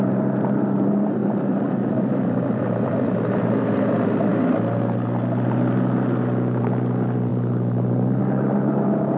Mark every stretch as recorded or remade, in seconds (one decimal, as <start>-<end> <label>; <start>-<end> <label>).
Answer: 0.0-4.3 remade; 4.3-6.6 recorded; 6.6-7.3 remade; 7.3-8.2 recorded; 8.2-9.2 remade